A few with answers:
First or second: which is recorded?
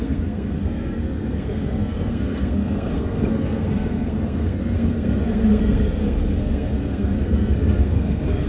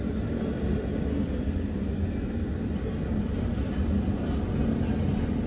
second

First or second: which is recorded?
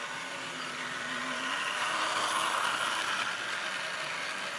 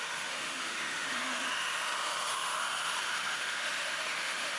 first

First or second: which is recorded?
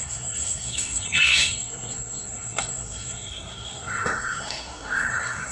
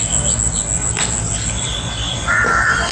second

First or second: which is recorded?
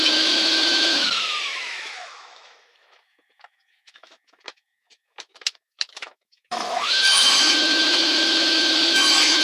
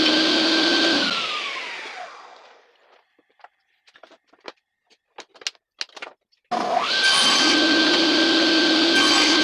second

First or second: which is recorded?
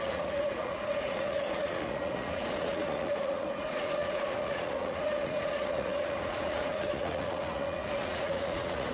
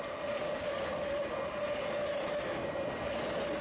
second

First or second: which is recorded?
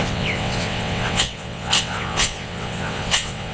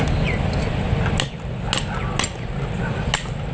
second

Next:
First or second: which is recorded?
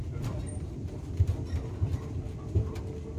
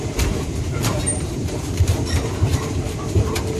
first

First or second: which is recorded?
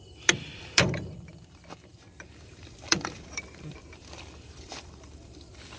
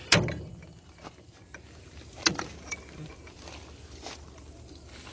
second